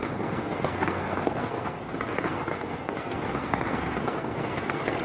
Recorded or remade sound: remade